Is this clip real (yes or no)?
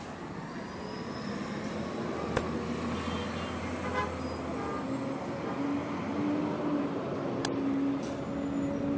yes